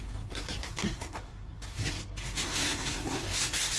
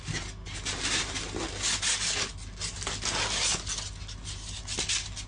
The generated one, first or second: first